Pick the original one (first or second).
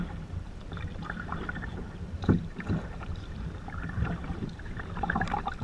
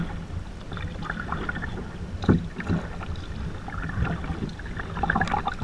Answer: second